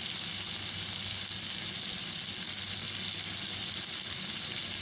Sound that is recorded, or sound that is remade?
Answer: recorded